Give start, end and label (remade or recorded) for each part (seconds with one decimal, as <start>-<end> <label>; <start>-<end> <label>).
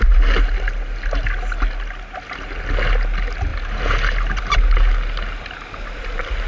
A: 0.0-6.5 recorded